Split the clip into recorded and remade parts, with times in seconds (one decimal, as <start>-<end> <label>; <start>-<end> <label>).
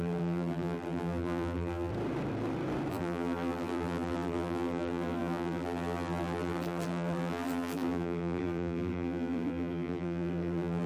0.0-1.9 remade; 1.9-2.9 recorded; 2.9-10.9 remade